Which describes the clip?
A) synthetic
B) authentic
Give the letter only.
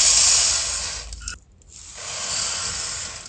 B